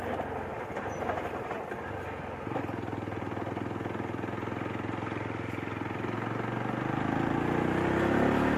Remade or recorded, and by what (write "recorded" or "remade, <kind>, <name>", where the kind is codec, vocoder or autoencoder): recorded